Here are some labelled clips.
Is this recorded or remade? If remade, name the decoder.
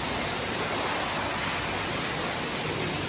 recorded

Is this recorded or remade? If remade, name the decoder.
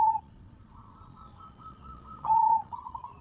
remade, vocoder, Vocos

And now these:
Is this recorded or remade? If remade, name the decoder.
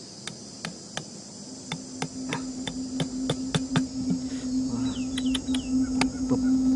recorded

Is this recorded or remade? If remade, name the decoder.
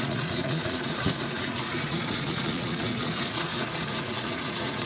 remade, vocoder, Vocos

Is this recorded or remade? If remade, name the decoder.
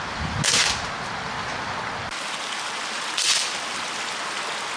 recorded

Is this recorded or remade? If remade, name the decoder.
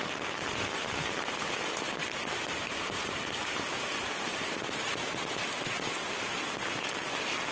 recorded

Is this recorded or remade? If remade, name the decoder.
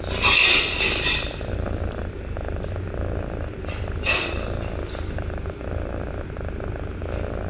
recorded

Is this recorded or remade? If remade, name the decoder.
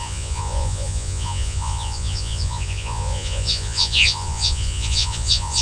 remade, vocoder, Vocos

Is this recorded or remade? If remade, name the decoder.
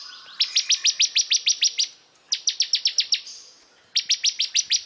recorded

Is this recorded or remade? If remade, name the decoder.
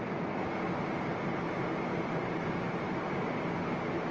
recorded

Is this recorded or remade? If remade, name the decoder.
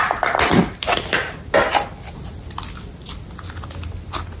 recorded